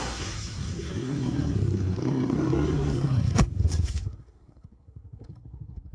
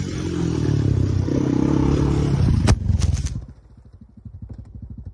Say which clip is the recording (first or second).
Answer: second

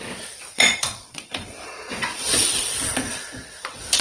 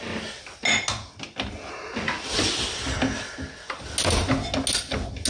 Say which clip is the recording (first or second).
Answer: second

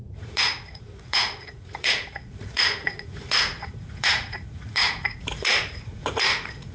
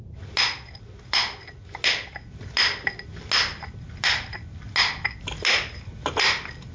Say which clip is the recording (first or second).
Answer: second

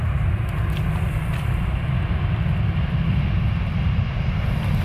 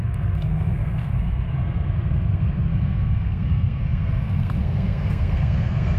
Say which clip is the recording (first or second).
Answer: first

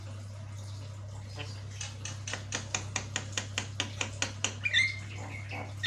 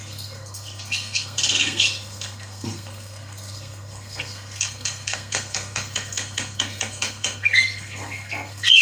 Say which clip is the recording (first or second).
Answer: first